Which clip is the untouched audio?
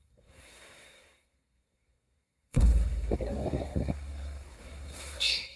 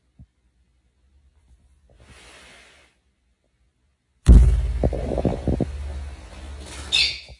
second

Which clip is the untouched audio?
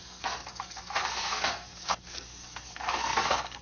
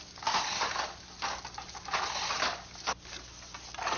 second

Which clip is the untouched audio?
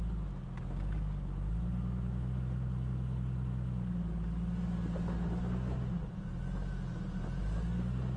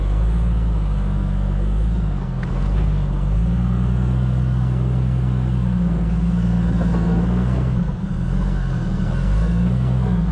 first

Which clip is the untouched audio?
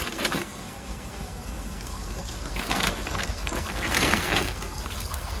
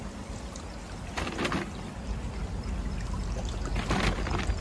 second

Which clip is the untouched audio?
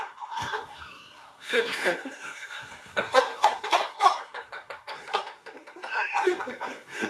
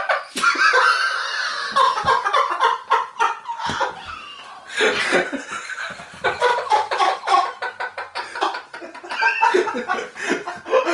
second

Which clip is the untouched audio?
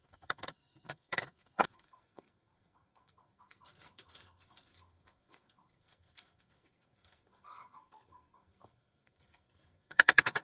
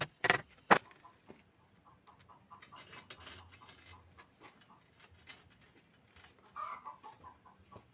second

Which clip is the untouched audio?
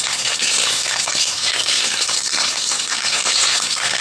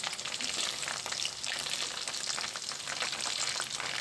second